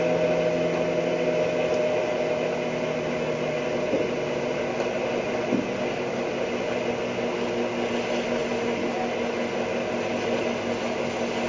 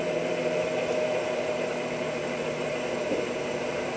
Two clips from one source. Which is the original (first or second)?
first